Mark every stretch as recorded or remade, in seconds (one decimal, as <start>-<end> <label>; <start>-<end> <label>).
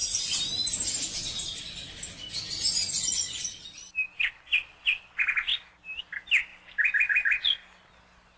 0.0-8.4 recorded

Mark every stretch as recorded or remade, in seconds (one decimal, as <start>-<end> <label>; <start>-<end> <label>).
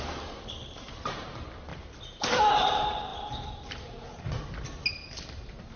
0.0-1.7 recorded; 1.7-2.5 remade; 2.5-3.1 recorded; 3.1-4.4 remade; 4.4-5.8 recorded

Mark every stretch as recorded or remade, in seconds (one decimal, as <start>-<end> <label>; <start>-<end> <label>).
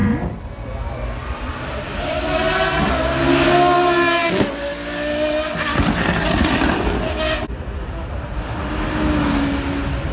0.0-2.8 remade; 2.8-10.1 recorded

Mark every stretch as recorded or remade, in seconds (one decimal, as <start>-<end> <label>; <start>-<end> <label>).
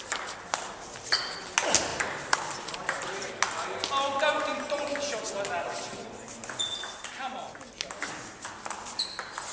0.0-1.9 recorded; 1.9-3.3 remade; 3.3-9.5 recorded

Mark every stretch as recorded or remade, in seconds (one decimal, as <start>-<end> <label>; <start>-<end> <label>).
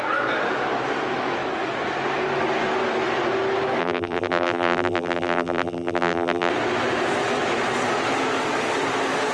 0.0-3.8 recorded; 3.8-6.5 remade; 6.5-9.3 recorded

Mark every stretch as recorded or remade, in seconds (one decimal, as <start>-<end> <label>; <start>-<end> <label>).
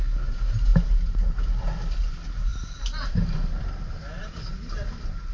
0.0-2.5 recorded; 2.5-3.6 remade; 3.6-5.3 recorded